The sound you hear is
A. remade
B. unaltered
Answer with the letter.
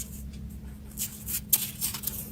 B